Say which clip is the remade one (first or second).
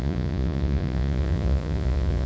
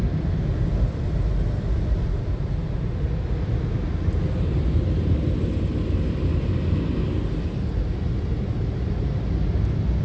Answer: first